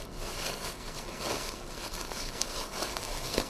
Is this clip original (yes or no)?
no